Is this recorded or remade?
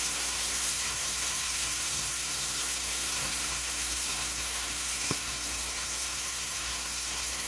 remade